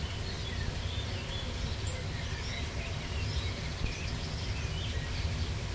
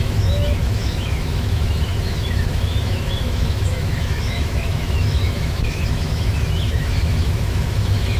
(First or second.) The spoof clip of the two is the second